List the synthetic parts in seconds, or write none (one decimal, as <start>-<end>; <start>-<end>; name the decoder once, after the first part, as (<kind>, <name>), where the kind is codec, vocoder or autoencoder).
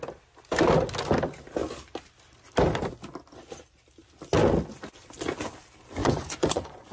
6.0-6.9 (vocoder, Vocos)